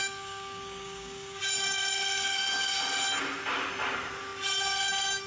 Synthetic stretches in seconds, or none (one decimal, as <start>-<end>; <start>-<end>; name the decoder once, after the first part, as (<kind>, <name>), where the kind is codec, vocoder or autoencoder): 0.0-1.4 (codec, DAC); 2.3-2.8